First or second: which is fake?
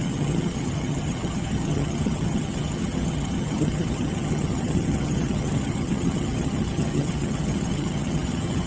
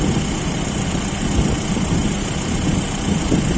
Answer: first